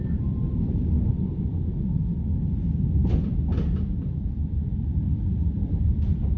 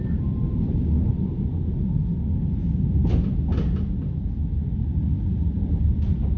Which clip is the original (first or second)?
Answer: second